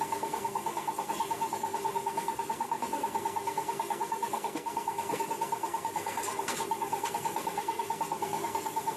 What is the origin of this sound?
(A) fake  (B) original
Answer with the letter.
A